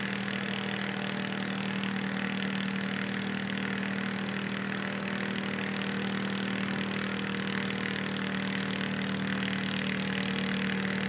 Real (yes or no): yes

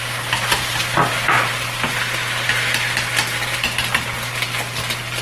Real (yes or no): yes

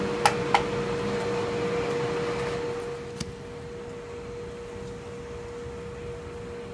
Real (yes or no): yes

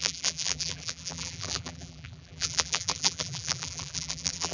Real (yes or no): no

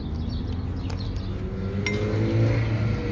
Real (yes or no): yes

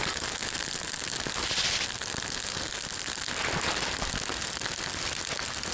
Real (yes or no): yes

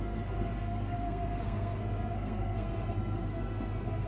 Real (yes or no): no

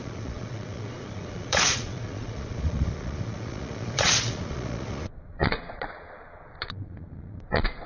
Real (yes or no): no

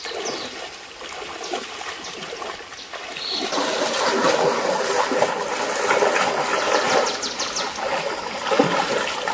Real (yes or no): yes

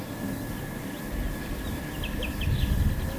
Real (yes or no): yes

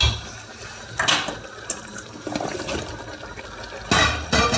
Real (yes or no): yes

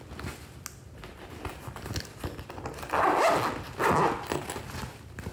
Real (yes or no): yes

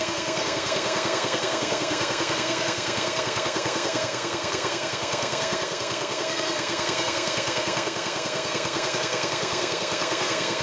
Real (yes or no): no